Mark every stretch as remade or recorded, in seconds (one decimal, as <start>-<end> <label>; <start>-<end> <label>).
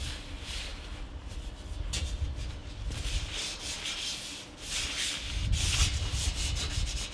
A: 0.0-7.1 recorded